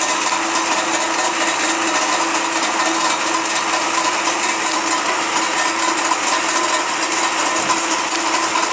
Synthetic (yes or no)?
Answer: no